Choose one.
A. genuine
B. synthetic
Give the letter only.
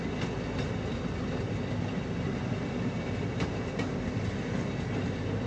A